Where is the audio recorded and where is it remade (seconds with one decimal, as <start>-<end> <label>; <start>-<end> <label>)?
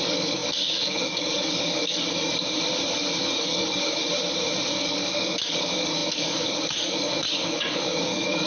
0.0-2.3 remade; 2.3-3.2 recorded; 3.2-4.0 remade; 4.0-4.7 recorded; 4.7-8.5 remade